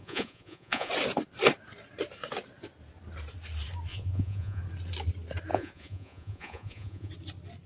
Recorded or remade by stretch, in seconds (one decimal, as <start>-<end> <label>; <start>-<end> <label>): 0.0-0.9 remade; 0.9-3.9 recorded; 3.9-4.6 remade; 4.6-5.5 recorded; 5.5-7.1 remade; 7.1-7.7 recorded